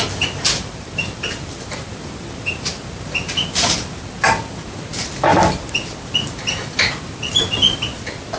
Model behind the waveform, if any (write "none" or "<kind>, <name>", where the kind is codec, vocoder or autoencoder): vocoder, BigVGAN v2